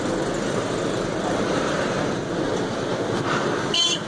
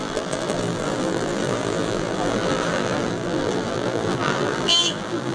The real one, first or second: first